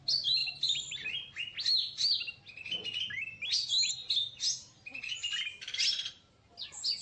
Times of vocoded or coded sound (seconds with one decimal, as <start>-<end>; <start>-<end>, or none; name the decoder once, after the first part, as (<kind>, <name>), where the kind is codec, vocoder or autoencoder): none